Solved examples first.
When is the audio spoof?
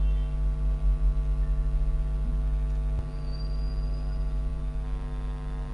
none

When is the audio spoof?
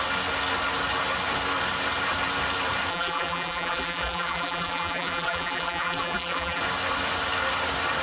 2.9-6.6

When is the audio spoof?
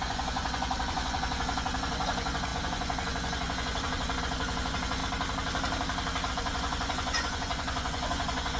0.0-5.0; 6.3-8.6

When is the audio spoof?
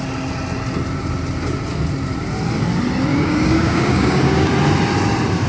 3.1-4.5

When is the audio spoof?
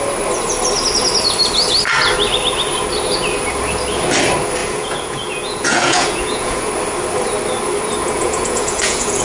4.6-6.7; 8.0-9.2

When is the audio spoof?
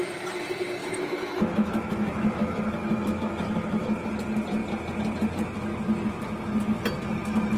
0.8-4.1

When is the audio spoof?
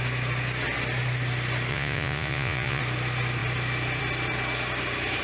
1.7-2.8